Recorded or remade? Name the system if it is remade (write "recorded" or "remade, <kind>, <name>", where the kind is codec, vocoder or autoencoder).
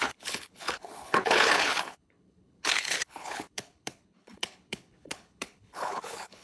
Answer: remade, codec, HILCodec